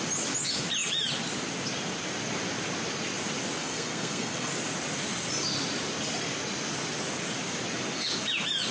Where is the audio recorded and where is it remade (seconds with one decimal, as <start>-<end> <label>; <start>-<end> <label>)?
0.0-3.6 recorded; 3.6-4.5 remade; 4.5-8.7 recorded